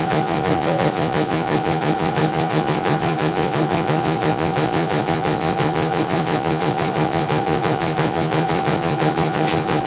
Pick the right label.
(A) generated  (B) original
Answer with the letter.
A